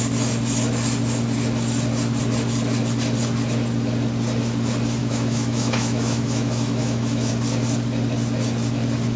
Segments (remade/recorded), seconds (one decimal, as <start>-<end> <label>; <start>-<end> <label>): 0.0-5.0 recorded; 5.0-7.3 remade; 7.3-9.2 recorded